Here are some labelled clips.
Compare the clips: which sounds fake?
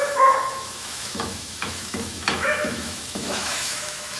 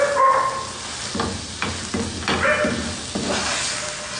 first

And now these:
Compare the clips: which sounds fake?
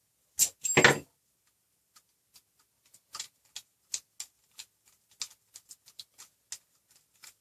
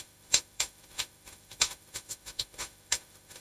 second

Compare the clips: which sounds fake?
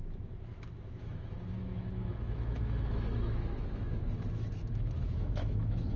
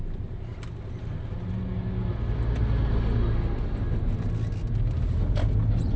first